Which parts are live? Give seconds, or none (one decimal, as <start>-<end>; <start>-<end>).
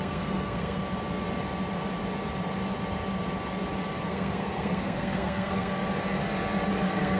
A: 0.8-4.1; 5.7-6.7